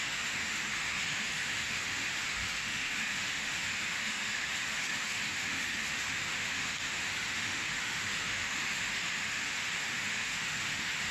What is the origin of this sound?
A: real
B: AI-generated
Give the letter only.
B